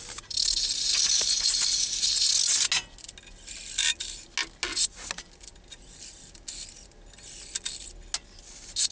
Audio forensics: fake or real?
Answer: real